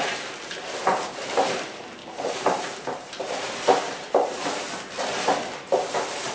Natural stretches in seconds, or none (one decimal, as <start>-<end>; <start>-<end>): 0.0-2.0; 4.7-6.3

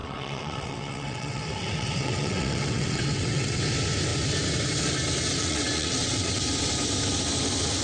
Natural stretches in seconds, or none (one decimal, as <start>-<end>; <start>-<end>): 3.6-5.4; 6.4-7.8

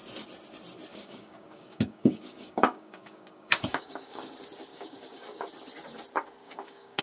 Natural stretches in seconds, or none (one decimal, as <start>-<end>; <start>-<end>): 0.0-0.9; 4.3-4.7; 5.5-6.4

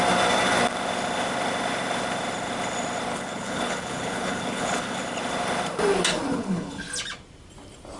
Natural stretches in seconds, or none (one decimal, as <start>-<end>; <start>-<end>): 0.0-3.1; 5.0-6.3; 6.8-8.0

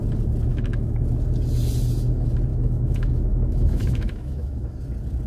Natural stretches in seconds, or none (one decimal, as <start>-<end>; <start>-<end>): 0.0-0.5; 1.0-2.5; 4.8-5.3

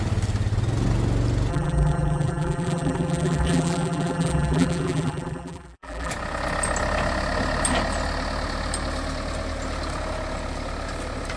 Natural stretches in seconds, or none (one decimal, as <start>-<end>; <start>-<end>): 0.0-1.5; 6.1-11.4